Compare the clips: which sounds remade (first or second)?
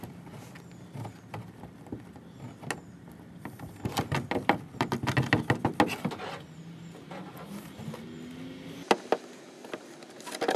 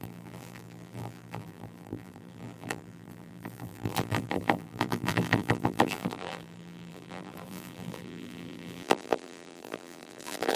second